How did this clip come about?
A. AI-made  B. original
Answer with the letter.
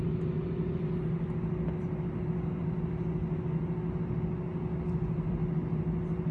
B